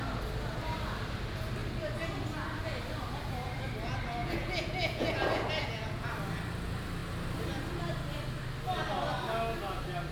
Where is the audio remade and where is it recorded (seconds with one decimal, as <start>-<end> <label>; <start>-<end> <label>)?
0.0-4.2 recorded; 4.2-6.1 remade; 6.1-10.1 recorded